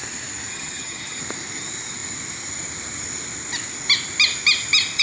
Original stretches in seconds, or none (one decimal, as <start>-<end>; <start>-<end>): 0.0-0.5; 1.2-5.0